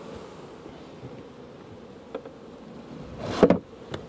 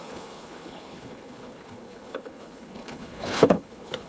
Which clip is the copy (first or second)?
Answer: second